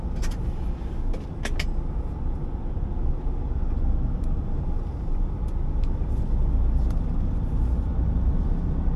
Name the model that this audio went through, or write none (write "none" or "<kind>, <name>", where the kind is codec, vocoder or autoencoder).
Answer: none